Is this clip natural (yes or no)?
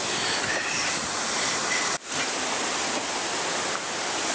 yes